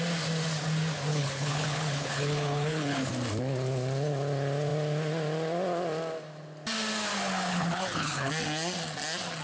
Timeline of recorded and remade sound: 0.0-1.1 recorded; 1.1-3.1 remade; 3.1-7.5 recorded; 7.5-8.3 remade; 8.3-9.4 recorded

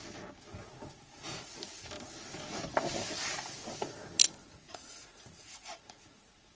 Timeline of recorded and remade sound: 0.0-0.5 recorded; 0.5-1.5 remade; 1.5-4.4 recorded; 4.4-6.5 remade

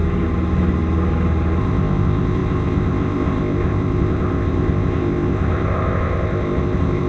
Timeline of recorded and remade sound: 0.0-1.6 recorded; 1.6-7.1 remade

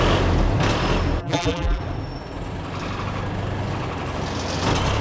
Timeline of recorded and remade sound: 0.0-1.2 recorded; 1.2-1.8 remade; 1.8-5.0 recorded

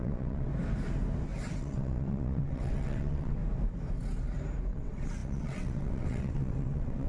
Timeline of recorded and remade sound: 0.0-0.5 remade; 0.5-1.6 recorded; 1.6-3.4 remade; 3.4-4.7 recorded; 4.7-7.1 remade

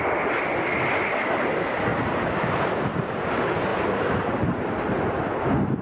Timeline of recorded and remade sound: 0.0-5.8 recorded

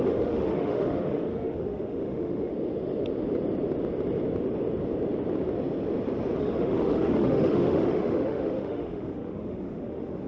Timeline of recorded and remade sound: 0.0-2.5 remade; 2.5-6.4 recorded; 6.4-10.3 remade